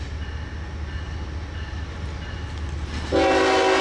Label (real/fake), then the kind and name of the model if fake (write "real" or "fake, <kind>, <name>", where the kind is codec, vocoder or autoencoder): real